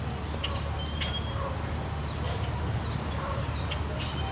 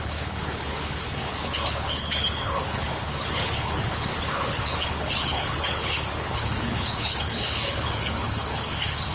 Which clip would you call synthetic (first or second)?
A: second